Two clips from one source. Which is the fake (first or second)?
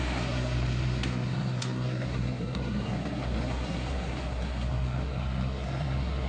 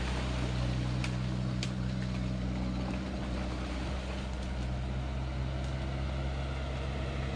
first